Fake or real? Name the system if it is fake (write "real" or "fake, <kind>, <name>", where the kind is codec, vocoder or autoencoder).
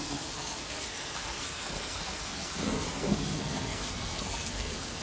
fake, codec, SNAC